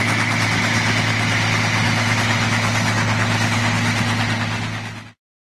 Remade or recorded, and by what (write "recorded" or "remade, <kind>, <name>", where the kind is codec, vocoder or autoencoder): recorded